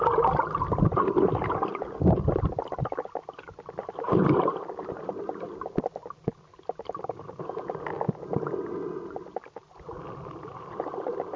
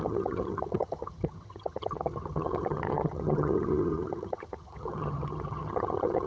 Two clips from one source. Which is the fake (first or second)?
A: second